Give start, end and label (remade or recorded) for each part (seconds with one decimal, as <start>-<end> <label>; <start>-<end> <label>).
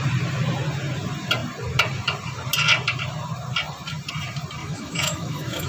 0.0-4.6 recorded; 4.6-5.7 remade